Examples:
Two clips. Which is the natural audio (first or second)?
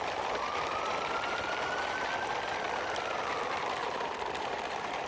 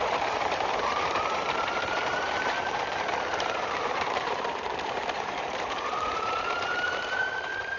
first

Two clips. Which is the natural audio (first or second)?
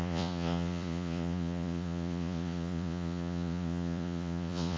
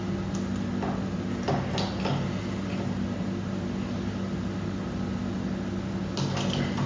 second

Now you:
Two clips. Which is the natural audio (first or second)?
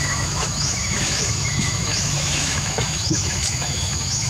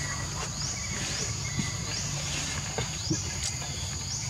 second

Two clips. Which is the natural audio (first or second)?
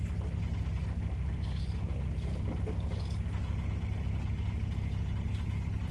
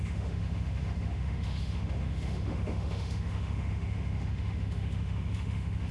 first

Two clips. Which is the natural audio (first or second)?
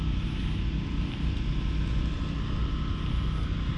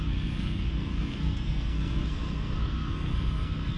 first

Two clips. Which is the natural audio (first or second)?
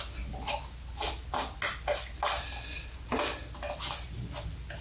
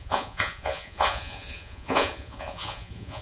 first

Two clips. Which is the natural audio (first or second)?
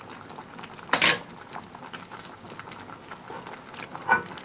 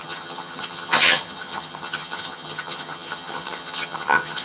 first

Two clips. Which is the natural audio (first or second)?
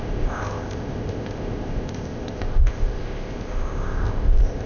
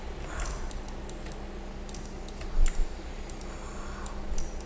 second